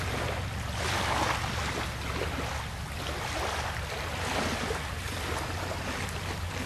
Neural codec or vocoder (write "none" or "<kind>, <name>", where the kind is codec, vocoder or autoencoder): none